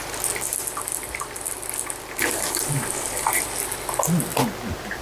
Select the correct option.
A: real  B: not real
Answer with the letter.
A